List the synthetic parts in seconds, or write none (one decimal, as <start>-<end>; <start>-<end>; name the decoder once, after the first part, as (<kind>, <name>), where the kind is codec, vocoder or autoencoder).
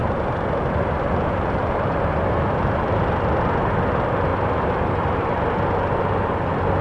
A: 0.0-3.0 (vocoder, BigVGAN v2)